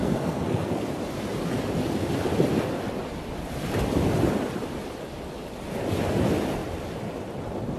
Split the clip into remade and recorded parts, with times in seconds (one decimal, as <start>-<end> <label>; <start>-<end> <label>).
0.0-0.9 remade; 0.9-7.8 recorded